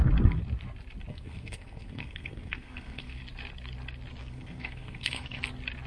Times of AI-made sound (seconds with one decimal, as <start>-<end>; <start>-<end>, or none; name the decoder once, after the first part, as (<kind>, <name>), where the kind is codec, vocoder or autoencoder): 1.1-3.2 (codec, SNAC); 4.2-5.4